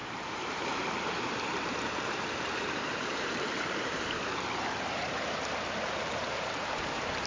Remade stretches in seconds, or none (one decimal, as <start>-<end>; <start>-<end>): 0.0-7.3